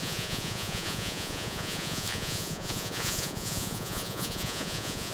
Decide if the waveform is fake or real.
fake